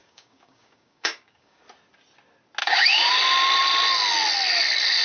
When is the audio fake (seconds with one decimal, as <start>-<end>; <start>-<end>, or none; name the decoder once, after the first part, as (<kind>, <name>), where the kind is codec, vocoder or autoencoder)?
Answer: 0.0-1.6 (codec, DAC); 2.6-3.1